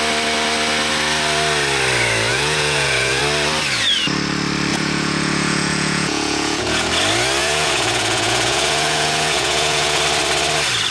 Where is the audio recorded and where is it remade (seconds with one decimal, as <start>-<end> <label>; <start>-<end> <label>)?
0.0-2.3 recorded; 2.3-3.2 remade; 3.2-4.7 recorded; 4.7-6.9 remade; 6.9-7.4 recorded; 7.4-10.0 remade; 10.0-10.9 recorded